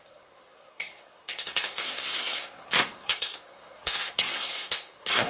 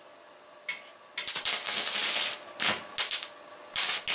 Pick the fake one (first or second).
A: first